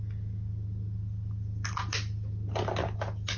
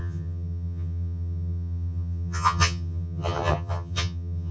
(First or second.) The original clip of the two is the first